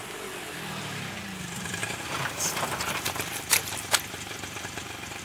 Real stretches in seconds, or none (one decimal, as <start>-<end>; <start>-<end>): 0.0-1.8